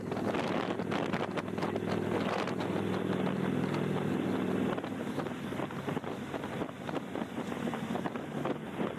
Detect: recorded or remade recorded